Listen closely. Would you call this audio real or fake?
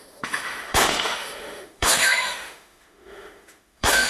fake